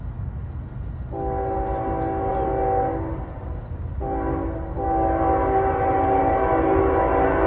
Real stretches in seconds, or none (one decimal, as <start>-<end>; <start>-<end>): 0.0-7.5